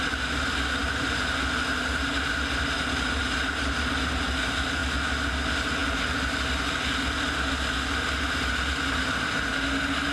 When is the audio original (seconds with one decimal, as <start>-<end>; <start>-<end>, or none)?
0.0-10.1